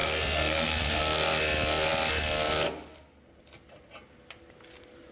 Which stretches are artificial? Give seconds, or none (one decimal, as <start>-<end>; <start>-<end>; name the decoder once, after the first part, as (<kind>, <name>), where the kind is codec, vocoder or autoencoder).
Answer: 0.0-1.0 (codec, SNAC)